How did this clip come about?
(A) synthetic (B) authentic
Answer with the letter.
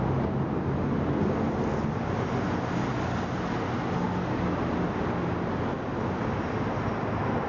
B